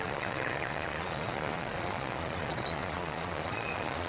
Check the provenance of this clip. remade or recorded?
remade